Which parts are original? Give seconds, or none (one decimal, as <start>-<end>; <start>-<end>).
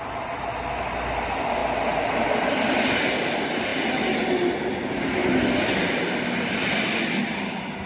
0.0-1.6; 2.5-5.2; 6.0-7.9